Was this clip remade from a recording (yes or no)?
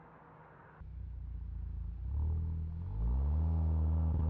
no